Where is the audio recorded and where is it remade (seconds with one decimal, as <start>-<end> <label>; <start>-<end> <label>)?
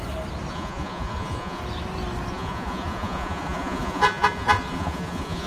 0.0-0.5 recorded; 0.5-1.6 remade; 1.6-2.3 recorded; 2.3-5.5 remade